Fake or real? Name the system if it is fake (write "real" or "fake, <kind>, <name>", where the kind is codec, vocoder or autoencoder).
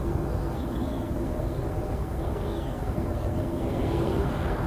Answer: fake, codec, SNAC